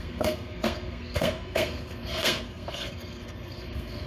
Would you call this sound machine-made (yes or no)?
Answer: yes